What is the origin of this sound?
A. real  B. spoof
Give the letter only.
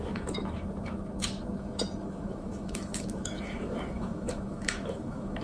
B